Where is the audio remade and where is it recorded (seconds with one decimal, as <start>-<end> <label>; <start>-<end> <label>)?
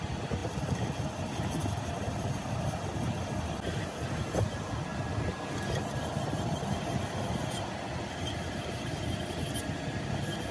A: 0.0-10.5 recorded